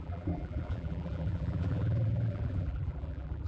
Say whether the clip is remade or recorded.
remade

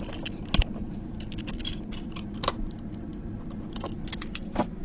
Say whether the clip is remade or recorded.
recorded